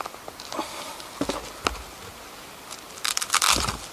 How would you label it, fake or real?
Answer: real